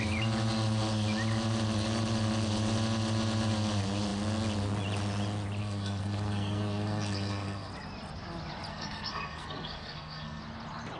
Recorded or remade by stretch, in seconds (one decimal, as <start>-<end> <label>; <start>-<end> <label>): 0.0-5.6 recorded; 5.6-7.7 remade; 7.7-8.7 recorded; 8.7-10.4 remade; 10.4-11.0 recorded